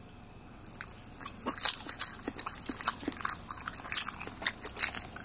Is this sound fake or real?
real